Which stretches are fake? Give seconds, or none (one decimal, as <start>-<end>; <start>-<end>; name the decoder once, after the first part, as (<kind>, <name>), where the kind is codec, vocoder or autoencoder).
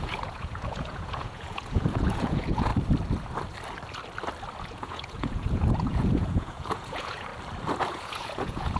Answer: 0.0-2.7 (vocoder, Vocos); 4.6-7.3; 7.9-8.8